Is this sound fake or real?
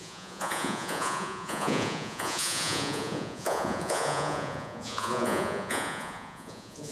fake